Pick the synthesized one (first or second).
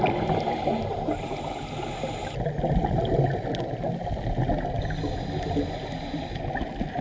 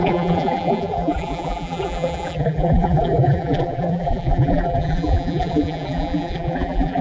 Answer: second